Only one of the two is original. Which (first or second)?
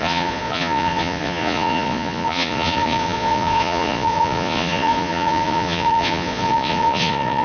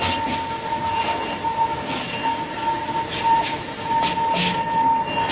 second